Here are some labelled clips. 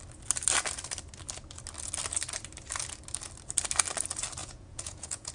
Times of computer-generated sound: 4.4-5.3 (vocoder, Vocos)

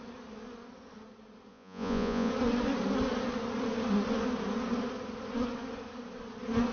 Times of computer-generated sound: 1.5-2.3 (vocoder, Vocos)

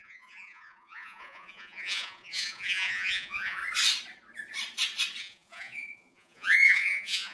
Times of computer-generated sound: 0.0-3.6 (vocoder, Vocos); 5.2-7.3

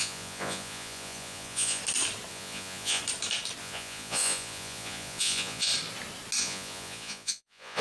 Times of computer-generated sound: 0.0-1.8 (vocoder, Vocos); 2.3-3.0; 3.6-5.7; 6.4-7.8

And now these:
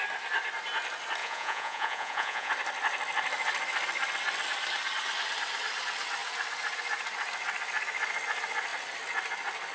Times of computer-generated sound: 1.2-2.5 (vocoder, Vocos)

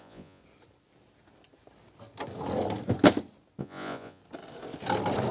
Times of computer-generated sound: 0.0-0.4 (vocoder, Vocos); 3.6-4.2